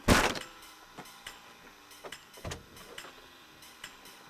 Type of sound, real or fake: real